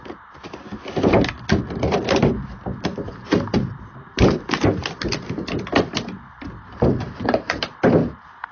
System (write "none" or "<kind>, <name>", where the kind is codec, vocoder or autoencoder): vocoder, BigVGAN v2